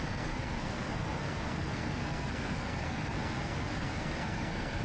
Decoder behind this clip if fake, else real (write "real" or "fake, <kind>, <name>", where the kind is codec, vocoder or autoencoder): fake, codec, SNAC